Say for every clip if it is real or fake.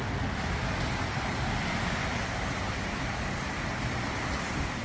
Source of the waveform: real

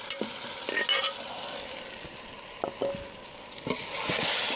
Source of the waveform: real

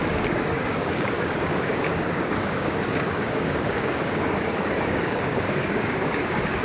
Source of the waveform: fake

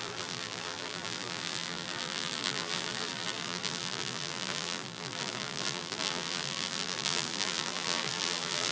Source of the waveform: fake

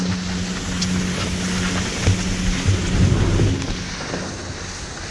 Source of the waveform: real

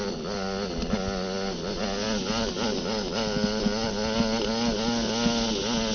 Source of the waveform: real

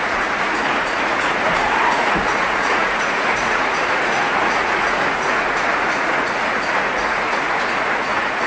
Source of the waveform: fake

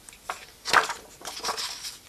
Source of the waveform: real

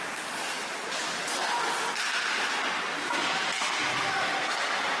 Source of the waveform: real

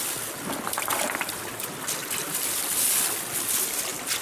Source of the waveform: real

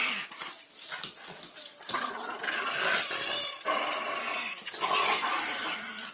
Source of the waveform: real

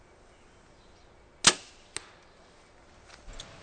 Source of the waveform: real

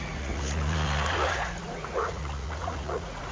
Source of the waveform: fake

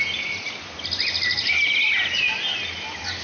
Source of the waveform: real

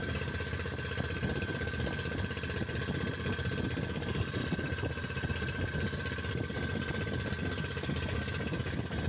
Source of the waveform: real